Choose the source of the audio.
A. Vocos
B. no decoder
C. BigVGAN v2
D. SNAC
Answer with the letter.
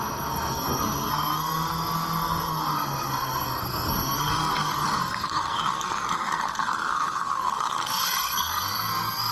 D